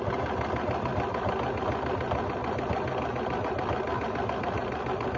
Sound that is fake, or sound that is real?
real